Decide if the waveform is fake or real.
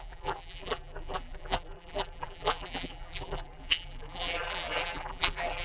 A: fake